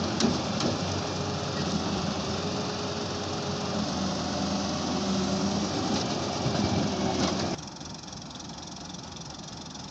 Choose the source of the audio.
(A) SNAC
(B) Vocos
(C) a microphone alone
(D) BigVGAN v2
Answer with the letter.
C